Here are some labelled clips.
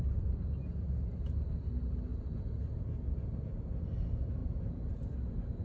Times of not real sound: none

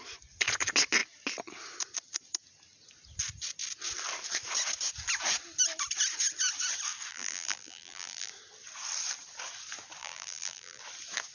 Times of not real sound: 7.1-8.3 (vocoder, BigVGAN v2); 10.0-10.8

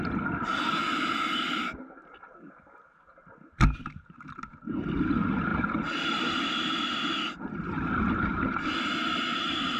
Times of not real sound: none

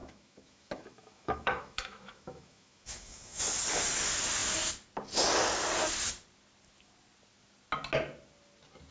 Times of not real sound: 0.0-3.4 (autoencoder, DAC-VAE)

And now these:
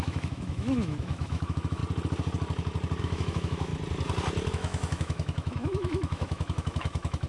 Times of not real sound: 0.0-1.8 (autoencoder, DAC-VAE); 3.0-3.7; 4.5-7.3

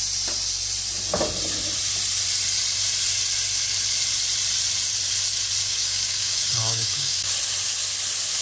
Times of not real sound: 5.6-7.3 (codec, DAC)

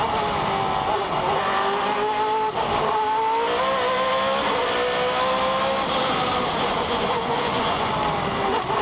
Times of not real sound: 6.7-7.9 (vocoder, Vocos)